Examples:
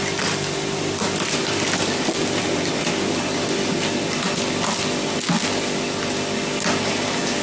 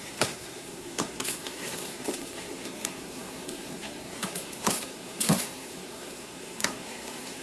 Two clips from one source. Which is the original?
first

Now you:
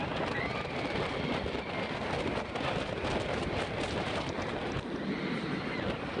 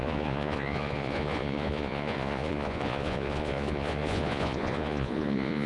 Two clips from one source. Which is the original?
first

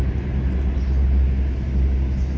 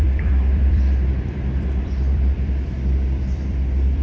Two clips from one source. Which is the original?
first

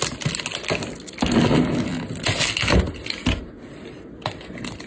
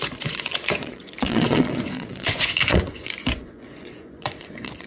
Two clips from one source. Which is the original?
first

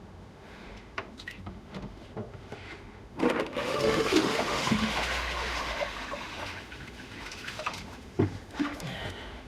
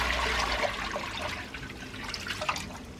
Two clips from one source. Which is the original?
second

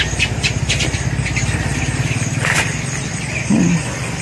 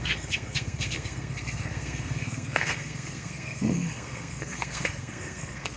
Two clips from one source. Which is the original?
first